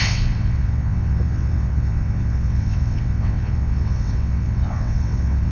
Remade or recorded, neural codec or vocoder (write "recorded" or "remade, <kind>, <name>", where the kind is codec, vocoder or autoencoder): remade, vocoder, WaveNeXt